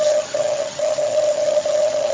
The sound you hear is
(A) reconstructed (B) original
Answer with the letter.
A